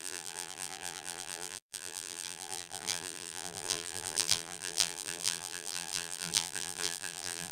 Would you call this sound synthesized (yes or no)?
yes